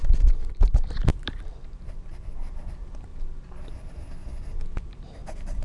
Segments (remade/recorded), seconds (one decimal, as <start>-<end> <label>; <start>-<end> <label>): 0.0-3.1 remade; 3.1-4.8 recorded; 4.8-5.6 remade